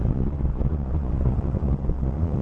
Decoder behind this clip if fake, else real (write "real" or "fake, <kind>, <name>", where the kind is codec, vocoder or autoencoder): fake, vocoder, Vocos